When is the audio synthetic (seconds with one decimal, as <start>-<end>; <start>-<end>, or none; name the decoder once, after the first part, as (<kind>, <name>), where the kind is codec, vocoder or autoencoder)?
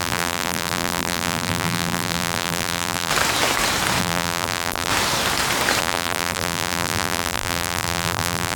0.0-3.1 (vocoder, BigVGAN v2); 4.0-4.9; 5.8-8.6